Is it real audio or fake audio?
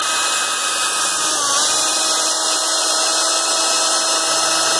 real